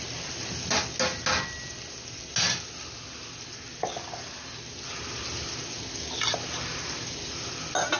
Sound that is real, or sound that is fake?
real